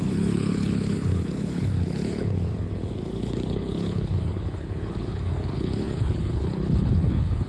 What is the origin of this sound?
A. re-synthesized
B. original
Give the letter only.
A